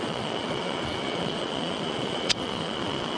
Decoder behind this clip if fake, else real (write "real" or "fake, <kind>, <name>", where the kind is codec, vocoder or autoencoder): fake, vocoder, Vocos